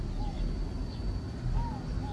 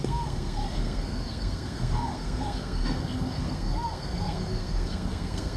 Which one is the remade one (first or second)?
second